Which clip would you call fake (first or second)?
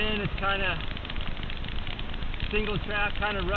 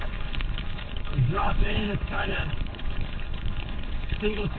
second